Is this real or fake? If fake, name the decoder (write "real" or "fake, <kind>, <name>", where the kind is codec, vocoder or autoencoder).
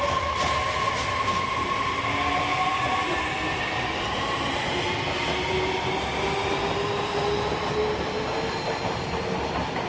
real